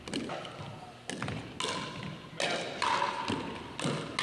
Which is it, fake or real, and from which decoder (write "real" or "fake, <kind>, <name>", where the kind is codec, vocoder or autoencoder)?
real